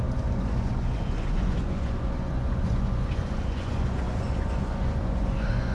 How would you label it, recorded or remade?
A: remade